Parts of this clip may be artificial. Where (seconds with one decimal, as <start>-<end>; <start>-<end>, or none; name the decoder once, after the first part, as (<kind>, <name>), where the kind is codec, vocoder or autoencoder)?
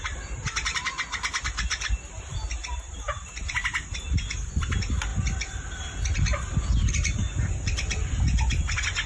none